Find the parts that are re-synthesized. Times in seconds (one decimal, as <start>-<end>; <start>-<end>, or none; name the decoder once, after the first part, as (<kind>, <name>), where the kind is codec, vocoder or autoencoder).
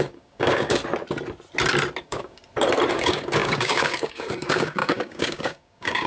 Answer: 0.0-0.8 (codec, DAC); 2.0-2.4; 2.9-6.1